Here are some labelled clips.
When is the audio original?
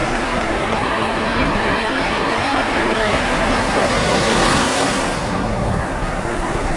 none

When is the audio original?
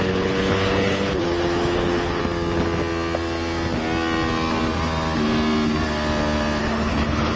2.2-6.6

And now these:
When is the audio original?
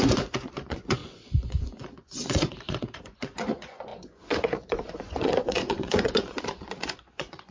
none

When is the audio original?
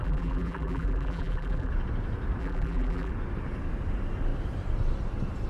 1.7-2.4; 3.1-5.5